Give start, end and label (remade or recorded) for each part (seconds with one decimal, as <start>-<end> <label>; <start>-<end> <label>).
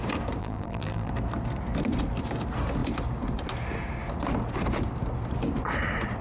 0.0-0.4 recorded; 0.4-1.1 remade; 1.1-6.2 recorded